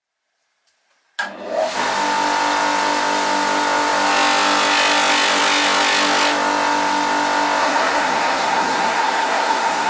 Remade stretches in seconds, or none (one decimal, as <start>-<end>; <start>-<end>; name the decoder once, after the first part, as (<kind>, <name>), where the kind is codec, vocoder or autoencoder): 7.6-9.9 (codec, SNAC)